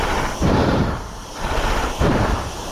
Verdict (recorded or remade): remade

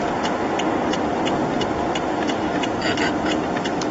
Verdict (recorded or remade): recorded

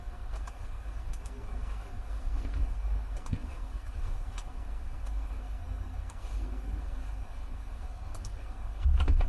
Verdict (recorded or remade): remade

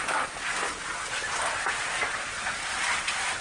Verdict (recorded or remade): recorded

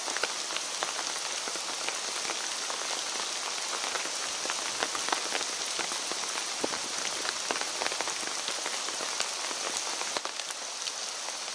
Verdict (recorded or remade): recorded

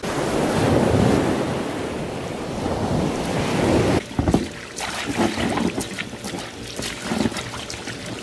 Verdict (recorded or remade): recorded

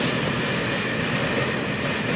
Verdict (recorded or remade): recorded